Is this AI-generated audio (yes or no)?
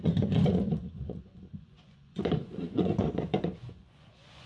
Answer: yes